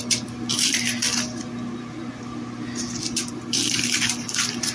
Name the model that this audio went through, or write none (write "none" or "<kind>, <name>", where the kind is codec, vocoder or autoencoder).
none